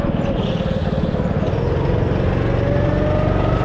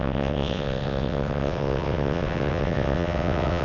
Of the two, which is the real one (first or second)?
first